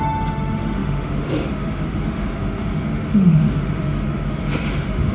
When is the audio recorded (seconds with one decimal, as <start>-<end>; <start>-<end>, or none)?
none